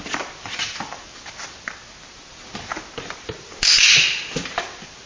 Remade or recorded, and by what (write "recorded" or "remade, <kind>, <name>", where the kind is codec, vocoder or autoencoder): recorded